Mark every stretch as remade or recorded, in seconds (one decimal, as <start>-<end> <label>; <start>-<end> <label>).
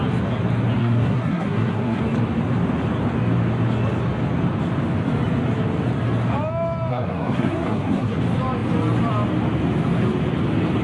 0.0-0.8 recorded; 0.8-2.0 remade; 2.0-6.9 recorded; 6.9-8.2 remade; 8.2-10.8 recorded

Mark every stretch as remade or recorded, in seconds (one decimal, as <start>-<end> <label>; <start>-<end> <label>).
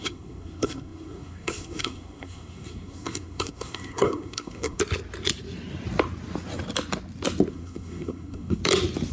0.0-4.8 remade; 4.8-7.5 recorded; 7.5-8.6 remade; 8.6-9.1 recorded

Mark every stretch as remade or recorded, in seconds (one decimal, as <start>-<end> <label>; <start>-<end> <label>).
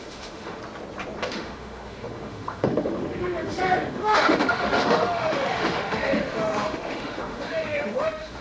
0.0-0.6 remade; 0.6-1.2 recorded; 1.2-8.4 remade